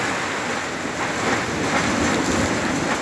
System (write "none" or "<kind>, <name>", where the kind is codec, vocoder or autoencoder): none